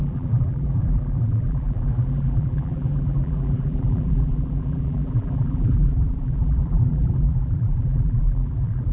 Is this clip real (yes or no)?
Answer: no